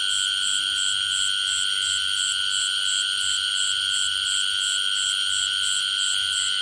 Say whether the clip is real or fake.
real